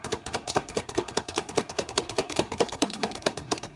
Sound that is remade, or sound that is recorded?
remade